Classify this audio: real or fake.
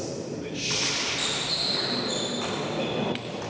fake